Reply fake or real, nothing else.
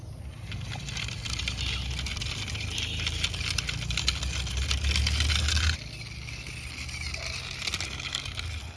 real